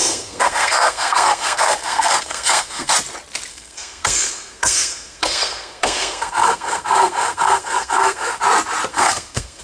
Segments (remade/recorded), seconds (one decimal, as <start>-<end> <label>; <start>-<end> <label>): 0.0-2.9 remade; 2.9-3.5 recorded; 3.5-8.4 remade; 8.4-8.9 recorded; 8.9-9.6 remade